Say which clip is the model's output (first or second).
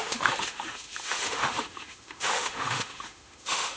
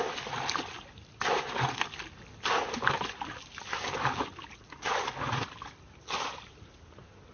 first